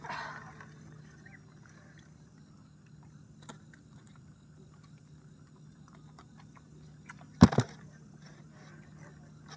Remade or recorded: recorded